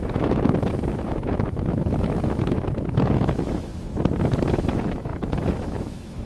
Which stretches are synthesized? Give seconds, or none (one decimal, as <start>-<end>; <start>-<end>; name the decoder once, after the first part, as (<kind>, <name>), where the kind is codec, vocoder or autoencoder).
0.0-3.7 (autoencoder, DAC-VAE); 4.5-6.3